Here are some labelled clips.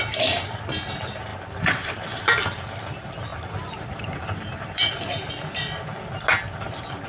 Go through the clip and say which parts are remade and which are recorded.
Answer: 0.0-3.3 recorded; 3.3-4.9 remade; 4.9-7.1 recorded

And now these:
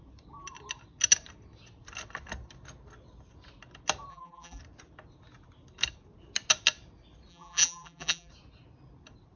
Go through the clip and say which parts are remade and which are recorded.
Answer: 0.0-4.1 recorded; 4.1-4.6 remade; 4.6-7.3 recorded; 7.3-8.3 remade; 8.3-9.4 recorded

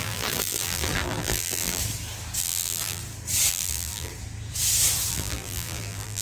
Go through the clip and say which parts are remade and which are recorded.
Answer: 0.0-1.8 remade; 1.8-2.4 recorded; 2.4-3.0 remade; 3.0-3.5 recorded; 3.5-4.1 remade; 4.1-5.1 recorded; 5.1-6.2 remade

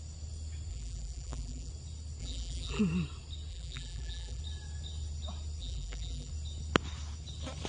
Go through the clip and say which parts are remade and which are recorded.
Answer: 0.0-0.7 recorded; 0.7-1.7 remade; 1.7-2.2 recorded; 2.2-2.8 remade; 2.8-3.5 recorded; 3.5-4.4 remade; 4.4-5.6 recorded; 5.6-6.3 remade; 6.3-7.7 recorded

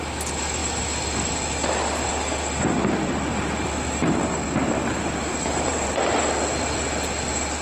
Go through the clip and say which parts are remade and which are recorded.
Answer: 0.0-4.6 recorded; 4.6-5.9 remade; 5.9-7.6 recorded

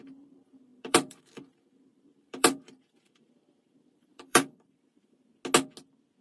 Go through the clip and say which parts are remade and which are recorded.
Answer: 0.0-5.3 remade; 5.3-6.2 recorded